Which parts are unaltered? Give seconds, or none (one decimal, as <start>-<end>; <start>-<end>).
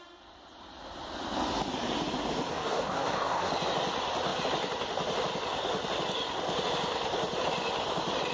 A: 0.0-2.5; 3.5-8.3